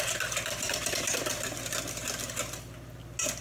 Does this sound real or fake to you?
real